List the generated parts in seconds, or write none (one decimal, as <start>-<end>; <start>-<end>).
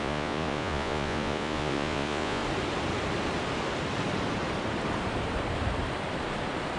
0.0-2.4